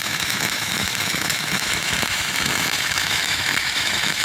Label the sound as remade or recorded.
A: remade